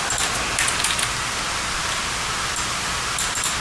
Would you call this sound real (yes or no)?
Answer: yes